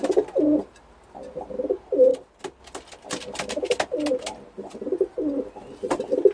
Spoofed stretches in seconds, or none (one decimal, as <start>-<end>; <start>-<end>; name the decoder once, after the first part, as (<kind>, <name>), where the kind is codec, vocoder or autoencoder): none